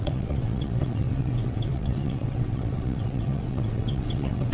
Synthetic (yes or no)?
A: yes